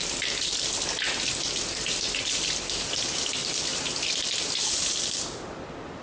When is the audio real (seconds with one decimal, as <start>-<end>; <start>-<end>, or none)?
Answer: 0.0-6.0